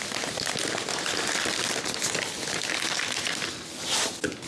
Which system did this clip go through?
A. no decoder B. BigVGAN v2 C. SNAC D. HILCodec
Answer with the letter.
A